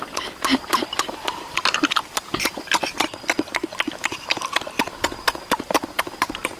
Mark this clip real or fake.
fake